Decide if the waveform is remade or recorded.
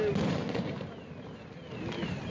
recorded